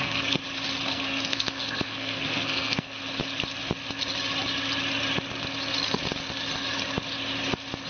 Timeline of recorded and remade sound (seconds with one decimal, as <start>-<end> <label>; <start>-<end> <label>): 0.0-0.4 remade; 0.4-0.9 recorded; 0.9-3.0 remade; 3.0-7.9 recorded